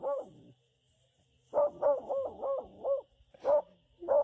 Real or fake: real